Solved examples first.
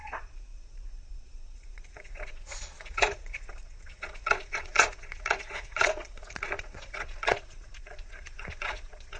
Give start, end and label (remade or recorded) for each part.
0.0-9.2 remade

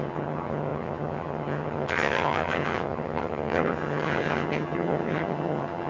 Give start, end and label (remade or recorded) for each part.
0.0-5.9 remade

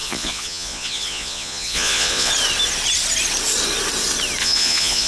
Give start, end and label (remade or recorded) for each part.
0.0-2.3 remade; 2.3-4.4 recorded; 4.4-5.1 remade